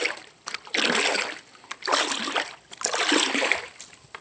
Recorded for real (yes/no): yes